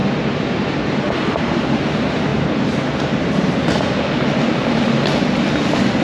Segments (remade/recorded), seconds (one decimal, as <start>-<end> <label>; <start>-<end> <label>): 0.0-1.6 remade; 1.6-2.3 recorded; 2.3-3.6 remade; 3.6-6.0 recorded